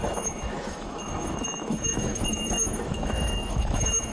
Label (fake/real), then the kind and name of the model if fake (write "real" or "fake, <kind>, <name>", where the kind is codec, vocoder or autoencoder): fake, autoencoder, DAC-VAE